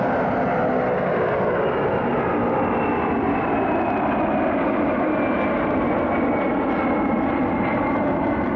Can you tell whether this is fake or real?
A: real